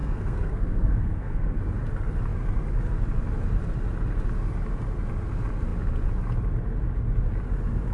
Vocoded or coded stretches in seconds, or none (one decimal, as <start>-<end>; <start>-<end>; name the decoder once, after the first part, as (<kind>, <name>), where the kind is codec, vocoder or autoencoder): 0.0-1.6 (codec, SNAC)